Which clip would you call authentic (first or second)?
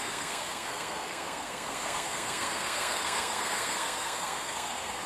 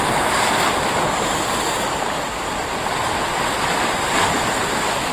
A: second